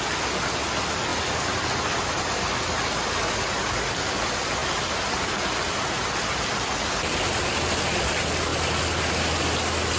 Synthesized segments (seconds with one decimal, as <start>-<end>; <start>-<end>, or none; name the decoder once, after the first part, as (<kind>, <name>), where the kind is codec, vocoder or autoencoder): none